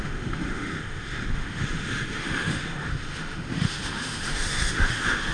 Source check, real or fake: fake